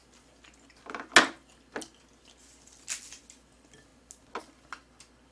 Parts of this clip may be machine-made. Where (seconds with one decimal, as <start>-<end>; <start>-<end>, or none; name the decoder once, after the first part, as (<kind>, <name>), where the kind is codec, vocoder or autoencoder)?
none